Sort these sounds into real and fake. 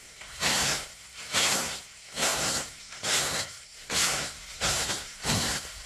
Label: fake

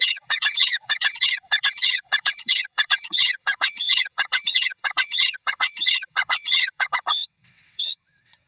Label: fake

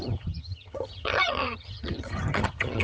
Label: fake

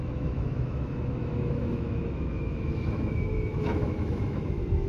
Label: fake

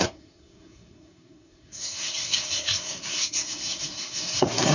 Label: fake